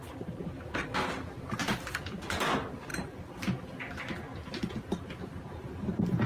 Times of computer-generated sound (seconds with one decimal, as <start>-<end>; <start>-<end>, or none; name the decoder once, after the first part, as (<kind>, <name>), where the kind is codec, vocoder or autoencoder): none